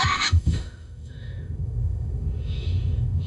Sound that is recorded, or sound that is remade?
remade